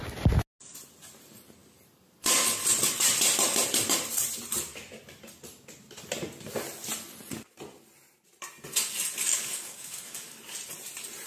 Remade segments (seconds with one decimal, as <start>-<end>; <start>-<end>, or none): 9.3-10.3